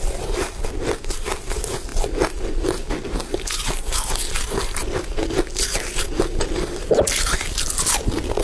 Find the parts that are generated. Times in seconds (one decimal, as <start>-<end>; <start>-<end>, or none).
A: none